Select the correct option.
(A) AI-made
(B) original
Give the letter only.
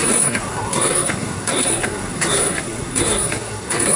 A